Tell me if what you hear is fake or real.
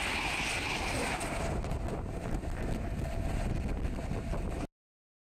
real